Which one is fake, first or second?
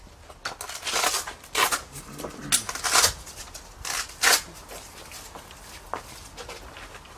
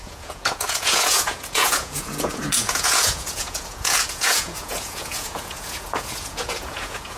second